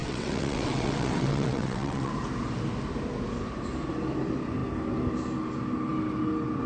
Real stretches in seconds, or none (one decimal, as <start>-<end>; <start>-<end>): 2.1-6.7